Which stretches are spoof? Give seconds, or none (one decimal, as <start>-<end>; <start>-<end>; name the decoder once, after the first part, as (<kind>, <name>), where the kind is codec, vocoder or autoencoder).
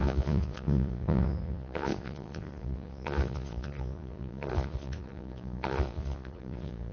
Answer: 0.0-6.9 (vocoder, Vocos)